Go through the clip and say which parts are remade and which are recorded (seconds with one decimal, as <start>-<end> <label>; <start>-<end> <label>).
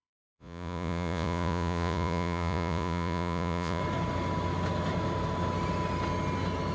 0.0-3.8 remade; 3.8-6.7 recorded